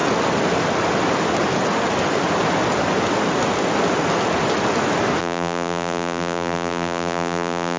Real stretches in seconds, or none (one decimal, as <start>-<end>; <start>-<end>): 0.0-5.2